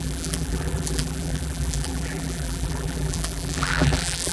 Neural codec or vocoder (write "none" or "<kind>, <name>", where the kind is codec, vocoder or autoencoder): vocoder, BigVGAN v2